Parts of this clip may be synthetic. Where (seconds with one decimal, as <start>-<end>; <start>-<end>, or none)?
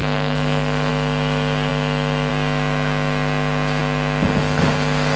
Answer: 0.0-0.9